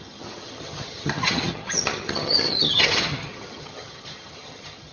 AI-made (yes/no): yes